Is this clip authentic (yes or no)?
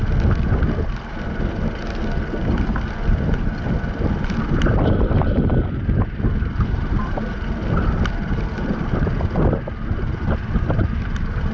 yes